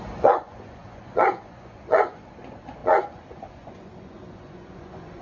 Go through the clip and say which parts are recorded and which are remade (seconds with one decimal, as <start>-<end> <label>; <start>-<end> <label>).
0.0-5.2 remade